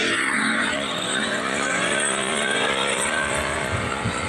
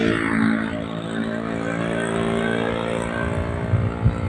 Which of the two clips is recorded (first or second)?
second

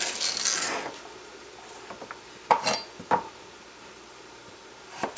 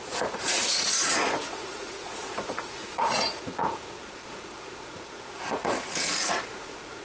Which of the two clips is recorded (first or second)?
first